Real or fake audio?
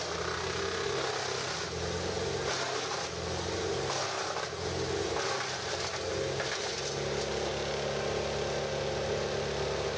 real